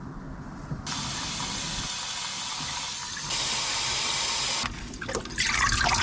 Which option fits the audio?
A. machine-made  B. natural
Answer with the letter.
B